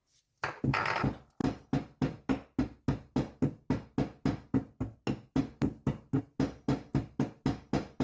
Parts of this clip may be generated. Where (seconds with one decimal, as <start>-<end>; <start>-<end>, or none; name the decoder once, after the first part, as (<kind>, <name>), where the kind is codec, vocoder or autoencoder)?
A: none